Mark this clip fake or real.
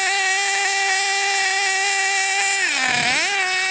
real